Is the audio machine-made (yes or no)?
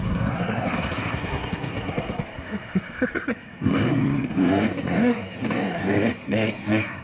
yes